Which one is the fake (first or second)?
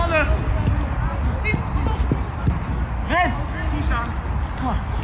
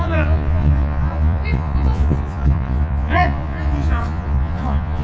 second